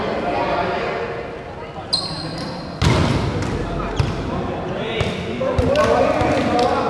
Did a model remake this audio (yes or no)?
no